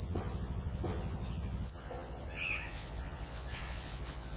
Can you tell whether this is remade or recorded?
remade